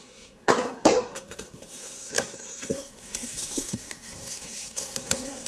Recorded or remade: remade